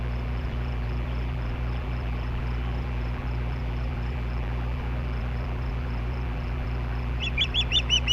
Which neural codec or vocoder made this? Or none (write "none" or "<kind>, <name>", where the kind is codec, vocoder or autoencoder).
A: vocoder, BigVGAN v2